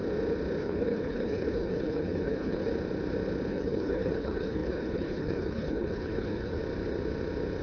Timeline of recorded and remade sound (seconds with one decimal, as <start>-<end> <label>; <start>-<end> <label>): 0.0-0.6 recorded; 0.6-2.7 remade; 2.7-3.5 recorded; 3.5-6.6 remade; 6.6-7.6 recorded